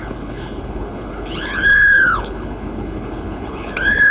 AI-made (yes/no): yes